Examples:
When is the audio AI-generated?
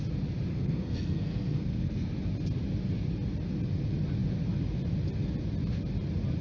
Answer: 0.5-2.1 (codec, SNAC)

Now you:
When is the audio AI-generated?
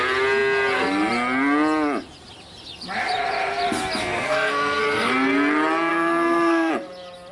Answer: 4.0-5.1 (codec, SNAC); 5.9-6.7